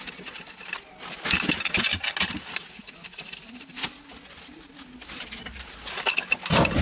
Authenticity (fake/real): real